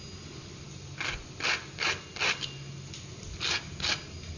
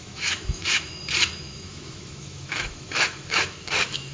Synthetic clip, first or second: second